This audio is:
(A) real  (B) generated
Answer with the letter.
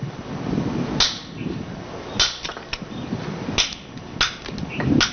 A